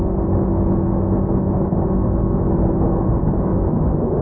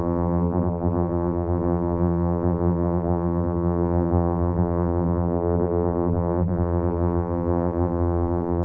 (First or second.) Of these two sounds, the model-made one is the second